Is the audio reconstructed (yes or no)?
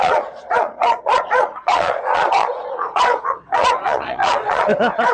yes